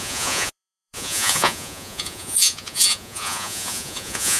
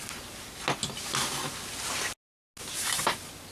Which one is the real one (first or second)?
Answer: second